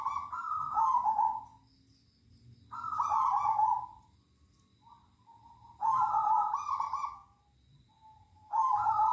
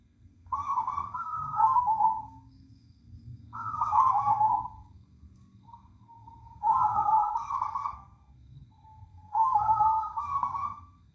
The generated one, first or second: second